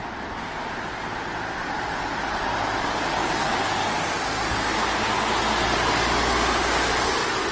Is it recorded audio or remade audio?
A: recorded